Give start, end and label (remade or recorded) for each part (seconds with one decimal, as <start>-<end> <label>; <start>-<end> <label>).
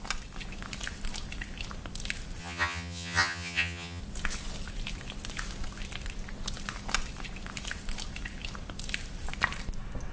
0.0-2.4 recorded; 2.4-4.0 remade; 4.0-10.1 recorded